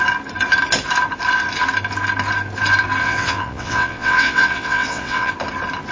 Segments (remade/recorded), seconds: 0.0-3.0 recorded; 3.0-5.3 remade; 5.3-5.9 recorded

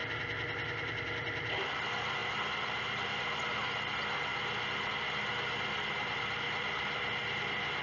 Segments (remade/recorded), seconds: 0.0-7.8 recorded